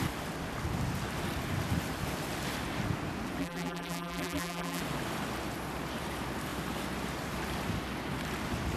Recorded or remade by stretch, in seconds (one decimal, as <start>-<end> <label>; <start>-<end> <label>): 0.0-3.4 recorded; 3.4-4.8 remade; 4.8-8.8 recorded